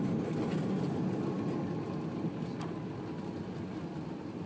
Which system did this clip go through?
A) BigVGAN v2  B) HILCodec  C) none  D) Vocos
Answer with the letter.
C